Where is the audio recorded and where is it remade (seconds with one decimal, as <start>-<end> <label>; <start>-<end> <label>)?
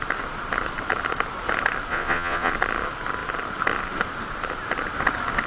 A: 0.0-1.9 recorded; 1.9-2.5 remade; 2.5-5.5 recorded